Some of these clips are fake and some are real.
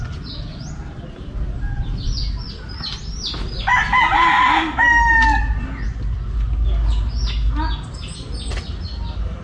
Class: real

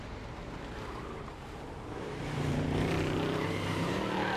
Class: fake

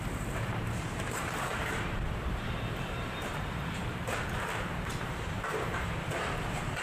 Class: fake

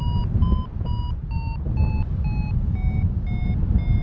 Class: real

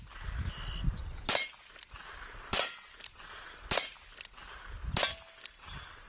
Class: real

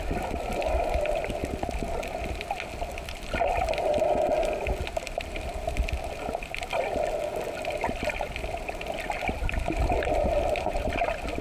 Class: real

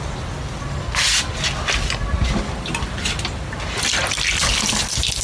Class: real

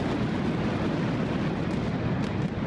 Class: real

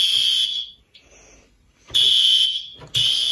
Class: real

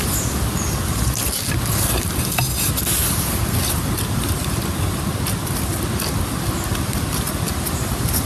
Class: real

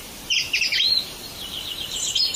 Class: fake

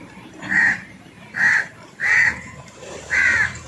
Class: fake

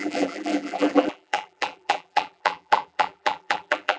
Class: fake